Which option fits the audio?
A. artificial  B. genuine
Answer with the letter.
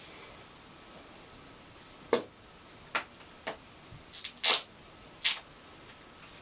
B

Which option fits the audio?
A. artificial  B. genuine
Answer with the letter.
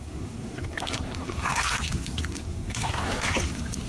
A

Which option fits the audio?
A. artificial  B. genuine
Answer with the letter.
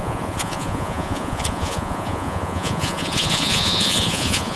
A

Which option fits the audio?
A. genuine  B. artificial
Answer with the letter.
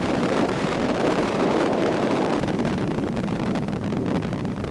B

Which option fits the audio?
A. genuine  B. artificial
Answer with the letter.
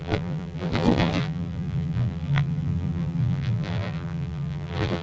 B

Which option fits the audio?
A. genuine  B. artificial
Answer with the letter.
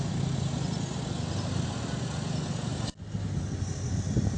A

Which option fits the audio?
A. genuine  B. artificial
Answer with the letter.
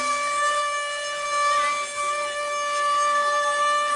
A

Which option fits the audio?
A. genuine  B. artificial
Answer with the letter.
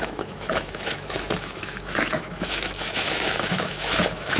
B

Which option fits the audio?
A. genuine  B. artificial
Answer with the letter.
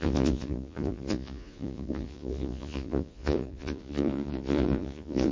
B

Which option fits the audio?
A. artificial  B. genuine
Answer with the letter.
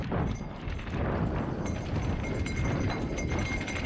B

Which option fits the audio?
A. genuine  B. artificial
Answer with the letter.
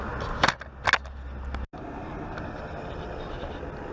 A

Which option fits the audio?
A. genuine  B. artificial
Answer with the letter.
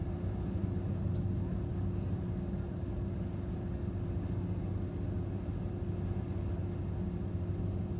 A